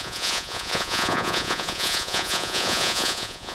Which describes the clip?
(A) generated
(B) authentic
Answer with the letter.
A